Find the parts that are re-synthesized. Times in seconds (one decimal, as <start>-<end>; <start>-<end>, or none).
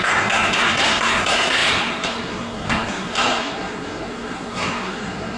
0.0-5.4